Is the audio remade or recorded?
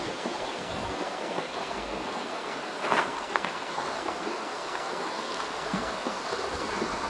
remade